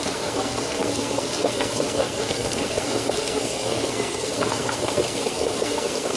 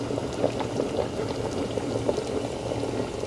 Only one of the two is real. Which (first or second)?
second